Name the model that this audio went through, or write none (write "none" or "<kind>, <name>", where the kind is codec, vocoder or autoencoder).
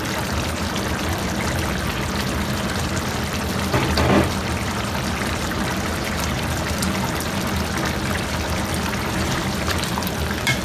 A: vocoder, BigVGAN v2